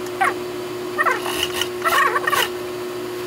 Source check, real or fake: real